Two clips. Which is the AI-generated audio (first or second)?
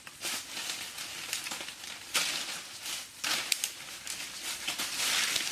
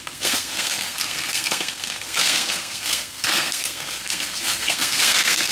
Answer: second